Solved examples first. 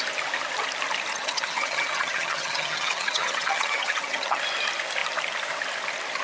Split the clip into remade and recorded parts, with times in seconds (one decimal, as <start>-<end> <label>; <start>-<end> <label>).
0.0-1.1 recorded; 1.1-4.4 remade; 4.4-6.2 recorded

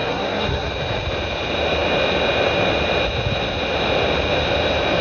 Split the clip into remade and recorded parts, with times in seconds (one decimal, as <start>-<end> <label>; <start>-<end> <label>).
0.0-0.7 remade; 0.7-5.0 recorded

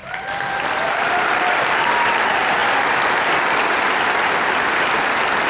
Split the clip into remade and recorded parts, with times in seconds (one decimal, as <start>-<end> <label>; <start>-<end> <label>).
0.0-5.5 remade

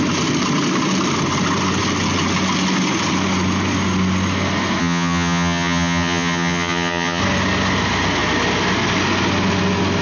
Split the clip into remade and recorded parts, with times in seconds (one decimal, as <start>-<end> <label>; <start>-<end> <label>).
0.0-4.8 recorded; 4.8-7.2 remade; 7.2-10.0 recorded

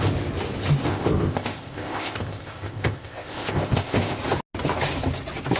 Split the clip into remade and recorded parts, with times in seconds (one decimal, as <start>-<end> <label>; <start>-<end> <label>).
0.0-0.9 recorded; 0.9-4.2 remade; 4.2-5.6 recorded

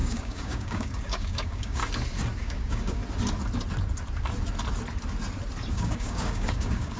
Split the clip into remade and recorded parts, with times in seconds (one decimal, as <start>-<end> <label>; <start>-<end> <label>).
0.0-1.8 remade; 1.8-2.4 recorded; 2.4-3.0 remade; 3.0-5.7 recorded; 5.7-7.0 remade